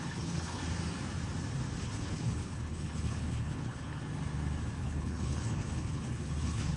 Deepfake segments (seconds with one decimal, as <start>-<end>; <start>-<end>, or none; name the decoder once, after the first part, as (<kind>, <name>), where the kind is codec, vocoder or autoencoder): 0.0-0.6 (codec, HILCodec); 1.8-4.0; 4.8-6.8